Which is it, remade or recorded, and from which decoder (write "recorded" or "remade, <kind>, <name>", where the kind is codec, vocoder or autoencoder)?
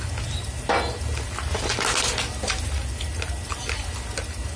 recorded